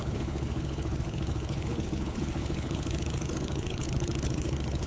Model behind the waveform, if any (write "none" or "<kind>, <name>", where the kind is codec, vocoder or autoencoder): codec, HILCodec